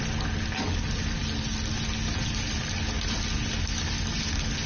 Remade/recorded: recorded